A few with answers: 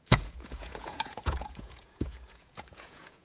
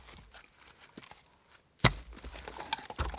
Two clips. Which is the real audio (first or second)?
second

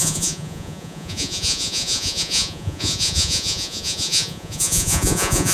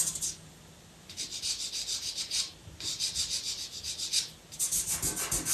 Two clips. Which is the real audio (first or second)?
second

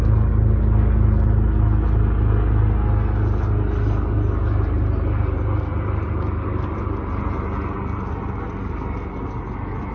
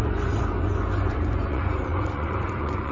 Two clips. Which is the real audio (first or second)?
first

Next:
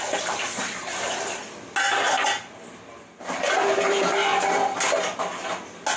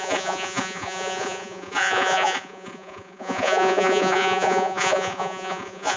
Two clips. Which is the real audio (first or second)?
first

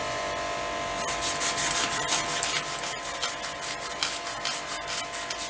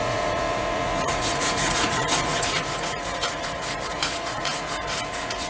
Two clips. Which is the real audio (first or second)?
first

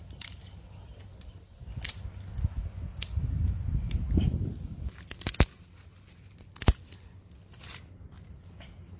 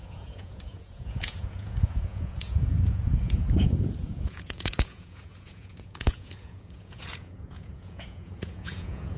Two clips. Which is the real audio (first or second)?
first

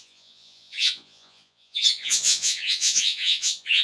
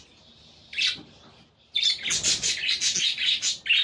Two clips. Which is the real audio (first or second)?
second